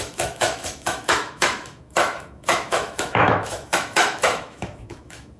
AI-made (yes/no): yes